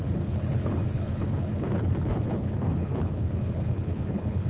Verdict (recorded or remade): remade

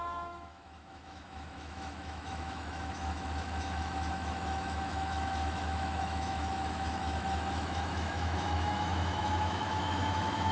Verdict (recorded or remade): remade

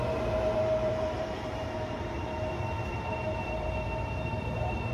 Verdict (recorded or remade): remade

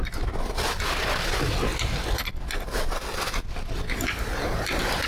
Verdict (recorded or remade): recorded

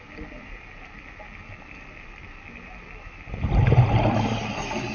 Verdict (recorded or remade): recorded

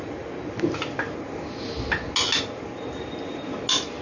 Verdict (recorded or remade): recorded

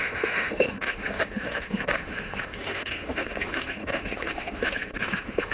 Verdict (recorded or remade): remade